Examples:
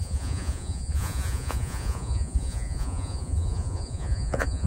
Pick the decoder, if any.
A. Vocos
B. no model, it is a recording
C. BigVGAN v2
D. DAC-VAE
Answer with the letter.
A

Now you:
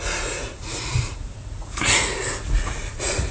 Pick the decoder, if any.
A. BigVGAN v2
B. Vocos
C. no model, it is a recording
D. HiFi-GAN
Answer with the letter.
B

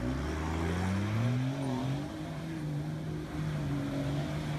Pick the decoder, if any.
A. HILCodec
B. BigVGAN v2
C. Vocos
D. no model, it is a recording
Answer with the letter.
D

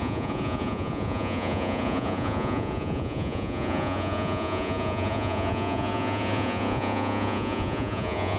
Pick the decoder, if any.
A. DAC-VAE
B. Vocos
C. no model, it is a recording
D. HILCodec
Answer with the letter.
B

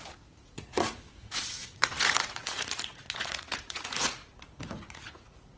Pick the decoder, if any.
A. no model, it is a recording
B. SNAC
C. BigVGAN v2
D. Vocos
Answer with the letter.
D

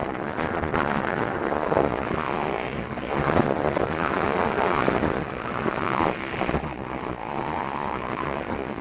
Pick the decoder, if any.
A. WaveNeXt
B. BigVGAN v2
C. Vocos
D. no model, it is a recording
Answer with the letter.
C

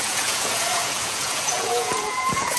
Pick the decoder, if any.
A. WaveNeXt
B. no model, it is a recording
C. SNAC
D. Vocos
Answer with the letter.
D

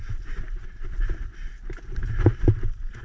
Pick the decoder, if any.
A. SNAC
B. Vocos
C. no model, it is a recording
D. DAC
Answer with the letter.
C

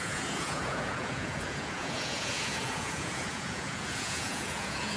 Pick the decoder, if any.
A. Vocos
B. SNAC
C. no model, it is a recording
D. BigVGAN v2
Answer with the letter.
A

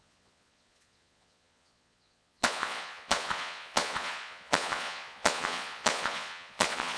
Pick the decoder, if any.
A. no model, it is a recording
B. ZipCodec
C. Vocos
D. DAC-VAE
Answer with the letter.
C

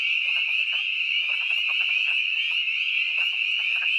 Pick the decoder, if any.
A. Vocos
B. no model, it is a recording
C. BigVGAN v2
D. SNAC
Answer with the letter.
B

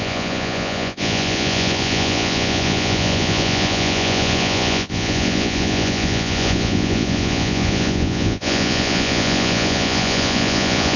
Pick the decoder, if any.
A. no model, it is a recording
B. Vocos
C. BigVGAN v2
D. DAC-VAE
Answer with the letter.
B